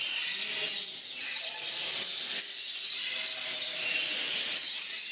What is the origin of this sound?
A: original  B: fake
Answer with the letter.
A